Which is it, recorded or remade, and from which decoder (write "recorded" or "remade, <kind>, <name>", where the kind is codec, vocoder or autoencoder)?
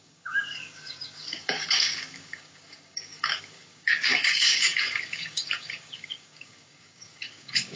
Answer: remade, codec, DAC